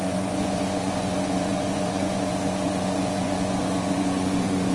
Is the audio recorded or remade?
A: remade